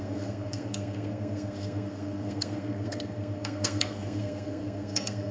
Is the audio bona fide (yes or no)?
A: no